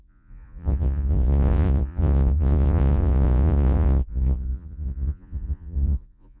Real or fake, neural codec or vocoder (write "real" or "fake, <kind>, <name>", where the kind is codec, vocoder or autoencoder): fake, vocoder, Vocos